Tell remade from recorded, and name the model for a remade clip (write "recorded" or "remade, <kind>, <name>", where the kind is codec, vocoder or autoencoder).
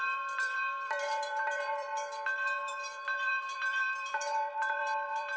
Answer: remade, vocoder, BigVGAN v2